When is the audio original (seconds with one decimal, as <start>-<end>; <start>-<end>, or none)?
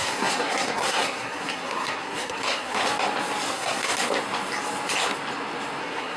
2.8-3.5; 3.9-5.8